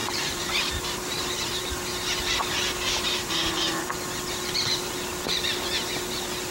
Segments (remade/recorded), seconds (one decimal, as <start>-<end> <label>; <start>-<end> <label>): 0.0-1.7 remade; 1.7-6.5 recorded